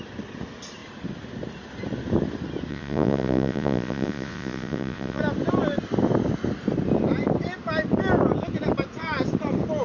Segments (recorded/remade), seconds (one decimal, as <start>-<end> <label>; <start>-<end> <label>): 0.0-2.7 recorded; 2.7-5.2 remade; 5.2-9.8 recorded